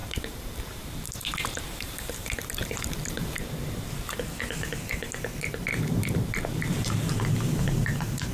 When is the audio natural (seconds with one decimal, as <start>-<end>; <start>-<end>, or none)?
4.2-5.7; 7.1-8.3